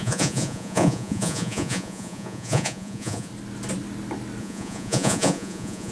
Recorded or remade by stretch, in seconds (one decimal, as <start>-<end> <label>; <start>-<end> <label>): 0.0-3.3 remade; 3.3-4.4 recorded; 4.4-5.9 remade